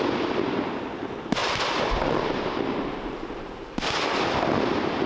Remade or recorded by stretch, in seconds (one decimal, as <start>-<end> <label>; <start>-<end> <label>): 0.0-1.4 recorded; 1.4-4.3 remade; 4.3-5.1 recorded